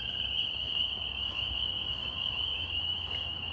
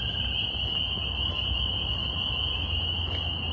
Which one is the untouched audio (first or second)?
second